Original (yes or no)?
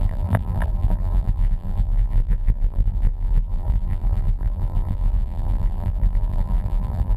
no